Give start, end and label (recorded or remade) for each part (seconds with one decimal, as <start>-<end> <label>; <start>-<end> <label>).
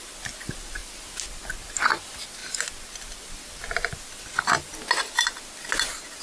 0.0-6.2 recorded